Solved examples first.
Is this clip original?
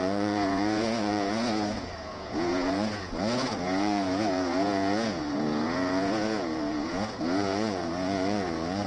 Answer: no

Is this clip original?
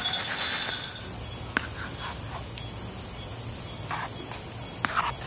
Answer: yes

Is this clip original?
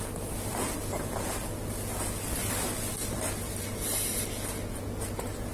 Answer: yes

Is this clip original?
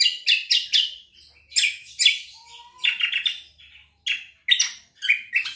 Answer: yes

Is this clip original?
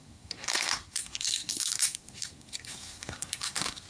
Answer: no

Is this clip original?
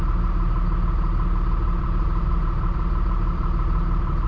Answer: no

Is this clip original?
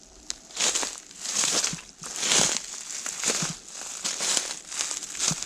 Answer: yes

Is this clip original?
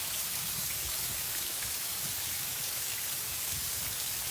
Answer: no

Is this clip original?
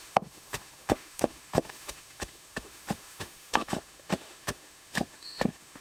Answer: no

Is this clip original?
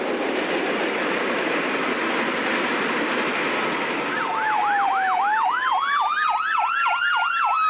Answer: yes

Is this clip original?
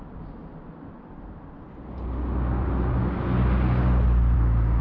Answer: yes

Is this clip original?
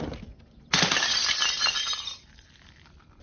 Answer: yes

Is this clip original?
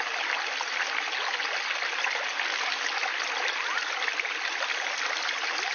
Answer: yes